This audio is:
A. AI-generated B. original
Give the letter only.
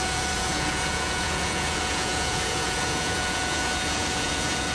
A